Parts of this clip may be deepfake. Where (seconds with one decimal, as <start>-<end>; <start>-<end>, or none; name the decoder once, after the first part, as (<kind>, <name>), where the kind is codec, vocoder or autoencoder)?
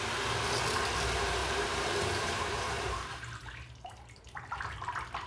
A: 1.4-4.6 (vocoder, BigVGAN v2)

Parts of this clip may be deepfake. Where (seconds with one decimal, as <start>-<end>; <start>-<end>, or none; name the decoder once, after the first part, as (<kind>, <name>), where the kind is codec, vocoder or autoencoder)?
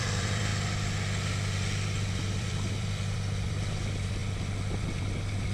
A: 0.0-0.5 (vocoder, BigVGAN v2); 2.2-4.2; 4.9-5.5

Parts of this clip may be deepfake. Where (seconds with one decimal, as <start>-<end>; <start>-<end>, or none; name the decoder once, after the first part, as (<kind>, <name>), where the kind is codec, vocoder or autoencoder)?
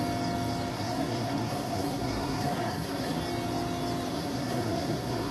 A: 0.7-3.2 (codec, SNAC); 4.1-5.3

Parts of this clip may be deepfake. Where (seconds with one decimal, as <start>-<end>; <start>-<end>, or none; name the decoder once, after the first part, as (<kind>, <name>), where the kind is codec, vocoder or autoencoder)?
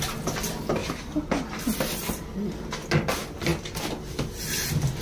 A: 0.8-1.3 (vocoder, BigVGAN v2)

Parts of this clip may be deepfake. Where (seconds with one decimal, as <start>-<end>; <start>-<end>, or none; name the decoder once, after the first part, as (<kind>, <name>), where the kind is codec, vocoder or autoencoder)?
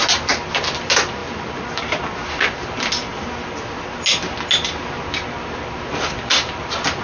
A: none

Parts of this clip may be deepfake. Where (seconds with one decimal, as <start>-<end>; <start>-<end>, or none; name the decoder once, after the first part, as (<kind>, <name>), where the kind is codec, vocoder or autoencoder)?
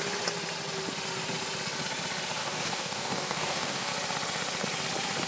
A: 2.4-3.9 (codec, DAC)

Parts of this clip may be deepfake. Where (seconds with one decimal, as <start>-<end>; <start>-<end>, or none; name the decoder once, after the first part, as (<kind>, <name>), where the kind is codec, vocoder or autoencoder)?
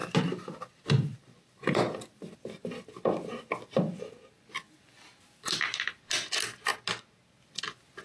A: none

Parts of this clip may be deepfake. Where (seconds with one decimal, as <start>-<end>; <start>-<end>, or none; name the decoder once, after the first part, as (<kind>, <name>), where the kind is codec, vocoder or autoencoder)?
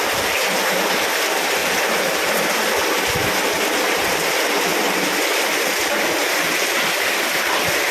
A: none